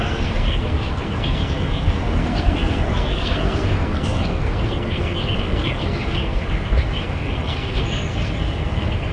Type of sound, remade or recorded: remade